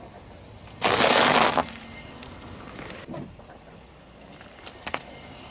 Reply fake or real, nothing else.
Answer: real